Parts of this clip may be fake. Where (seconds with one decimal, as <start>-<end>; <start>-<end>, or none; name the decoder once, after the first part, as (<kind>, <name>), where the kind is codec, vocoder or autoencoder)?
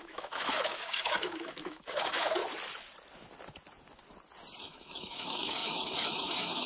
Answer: 0.0-2.4 (autoencoder, DAC-VAE); 4.6-6.7